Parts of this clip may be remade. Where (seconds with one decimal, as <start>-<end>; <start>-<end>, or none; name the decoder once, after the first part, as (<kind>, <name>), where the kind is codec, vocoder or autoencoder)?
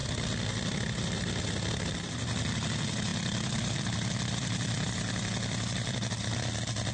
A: 3.1-6.5 (vocoder, BigVGAN v2)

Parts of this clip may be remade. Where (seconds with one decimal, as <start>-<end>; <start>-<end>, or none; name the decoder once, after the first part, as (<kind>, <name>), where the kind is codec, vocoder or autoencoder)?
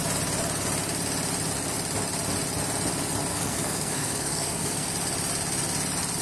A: 3.3-4.9 (codec, SNAC)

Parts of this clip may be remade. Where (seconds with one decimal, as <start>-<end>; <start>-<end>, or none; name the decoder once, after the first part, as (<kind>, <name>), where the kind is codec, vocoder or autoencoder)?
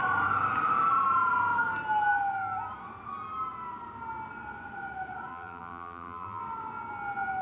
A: 5.3-6.4 (vocoder, BigVGAN v2)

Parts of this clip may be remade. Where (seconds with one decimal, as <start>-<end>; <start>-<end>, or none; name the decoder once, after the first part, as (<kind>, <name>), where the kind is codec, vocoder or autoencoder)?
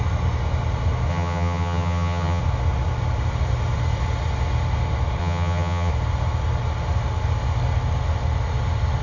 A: 1.1-2.4 (vocoder, HiFi-GAN); 5.2-5.9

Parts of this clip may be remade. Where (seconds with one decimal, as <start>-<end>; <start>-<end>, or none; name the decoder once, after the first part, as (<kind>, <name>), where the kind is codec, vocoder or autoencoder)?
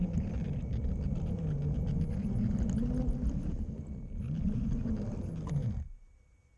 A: 5.6-6.6 (vocoder, BigVGAN v2)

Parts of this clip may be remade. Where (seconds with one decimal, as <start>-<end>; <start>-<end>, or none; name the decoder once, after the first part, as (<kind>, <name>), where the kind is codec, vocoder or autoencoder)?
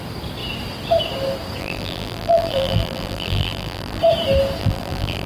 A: 1.6-4.0 (vocoder, BigVGAN v2); 4.6-5.3